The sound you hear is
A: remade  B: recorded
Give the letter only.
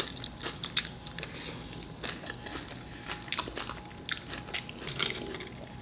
B